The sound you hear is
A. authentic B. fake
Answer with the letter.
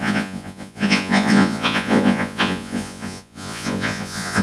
B